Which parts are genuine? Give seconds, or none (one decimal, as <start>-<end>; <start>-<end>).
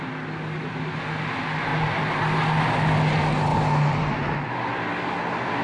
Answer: 0.0-1.7; 2.2-3.5; 4.1-5.6